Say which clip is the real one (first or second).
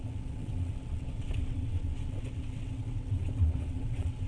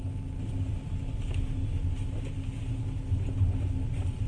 second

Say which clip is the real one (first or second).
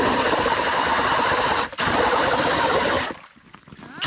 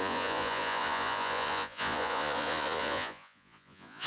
first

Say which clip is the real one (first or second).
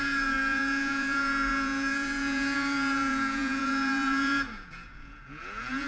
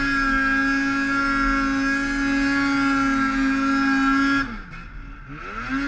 second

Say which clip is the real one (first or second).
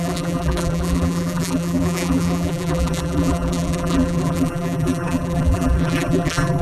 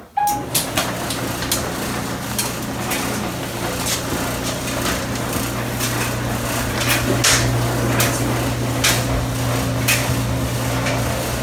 second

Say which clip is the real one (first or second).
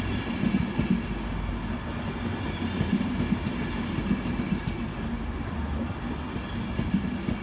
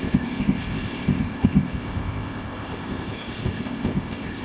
first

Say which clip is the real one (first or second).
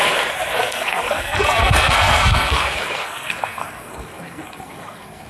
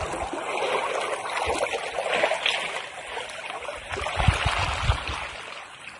second